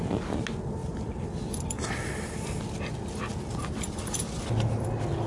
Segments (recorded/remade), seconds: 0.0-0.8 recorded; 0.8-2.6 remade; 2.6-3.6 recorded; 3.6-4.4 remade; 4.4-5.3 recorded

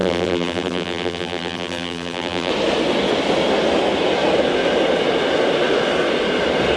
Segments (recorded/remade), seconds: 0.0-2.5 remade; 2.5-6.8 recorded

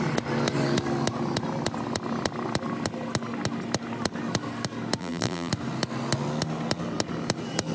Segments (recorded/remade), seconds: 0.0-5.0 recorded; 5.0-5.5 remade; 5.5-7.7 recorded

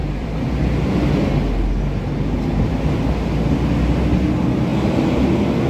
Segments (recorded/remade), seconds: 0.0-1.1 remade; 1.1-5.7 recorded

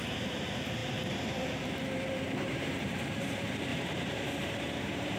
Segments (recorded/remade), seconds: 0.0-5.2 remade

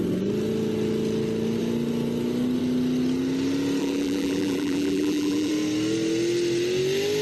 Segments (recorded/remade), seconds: 0.0-3.8 recorded; 3.8-5.5 remade; 5.5-7.2 recorded

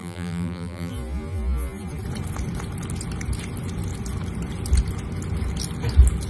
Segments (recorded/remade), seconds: 0.0-0.9 remade; 0.9-6.3 recorded

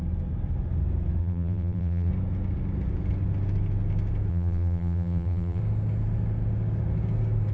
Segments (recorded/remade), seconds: 0.0-1.2 recorded; 1.2-2.1 remade; 2.1-4.3 recorded; 4.3-5.6 remade; 5.6-7.5 recorded